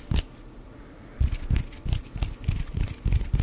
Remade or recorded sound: recorded